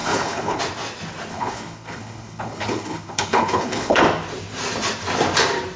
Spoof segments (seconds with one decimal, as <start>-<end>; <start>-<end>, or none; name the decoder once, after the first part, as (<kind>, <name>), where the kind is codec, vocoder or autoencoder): 0.0-0.6 (codec, HILCodec); 1.3-4.0